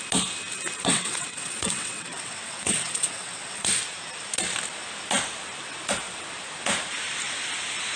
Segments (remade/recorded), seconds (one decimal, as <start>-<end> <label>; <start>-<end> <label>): 0.0-0.8 recorded; 0.8-3.8 remade; 3.8-8.0 recorded